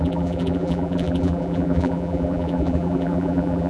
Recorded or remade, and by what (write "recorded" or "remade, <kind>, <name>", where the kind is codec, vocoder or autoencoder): remade, vocoder, BigVGAN v2